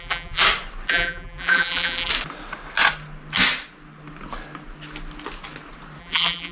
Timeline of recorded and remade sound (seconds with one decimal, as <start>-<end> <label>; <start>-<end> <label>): 0.0-0.4 remade; 0.4-0.9 recorded; 0.9-2.1 remade; 2.1-6.0 recorded; 6.0-6.5 remade